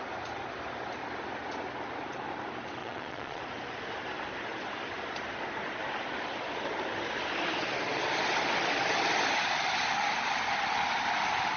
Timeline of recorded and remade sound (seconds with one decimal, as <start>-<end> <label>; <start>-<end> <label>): 0.0-2.8 recorded; 2.8-3.4 remade; 3.4-11.6 recorded